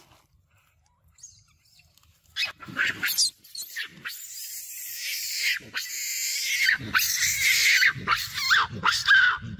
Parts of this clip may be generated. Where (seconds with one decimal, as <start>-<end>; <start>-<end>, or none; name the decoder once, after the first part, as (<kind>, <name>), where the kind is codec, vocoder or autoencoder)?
4.3-9.6 (vocoder, BigVGAN v2)